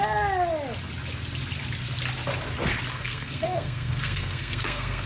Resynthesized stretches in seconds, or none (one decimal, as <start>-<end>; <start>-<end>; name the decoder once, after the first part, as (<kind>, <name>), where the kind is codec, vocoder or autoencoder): 2.9-5.1 (codec, SNAC)